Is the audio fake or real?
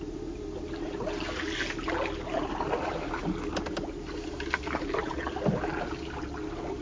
real